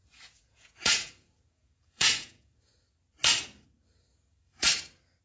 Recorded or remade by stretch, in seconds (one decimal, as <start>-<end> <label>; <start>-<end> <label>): 0.0-2.7 remade; 2.7-4.1 recorded; 4.1-4.7 remade; 4.7-5.2 recorded